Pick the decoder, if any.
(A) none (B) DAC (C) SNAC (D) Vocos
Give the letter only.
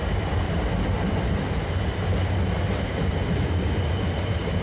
A